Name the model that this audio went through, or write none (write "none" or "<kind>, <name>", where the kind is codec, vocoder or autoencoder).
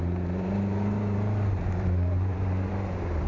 vocoder, BigVGAN v2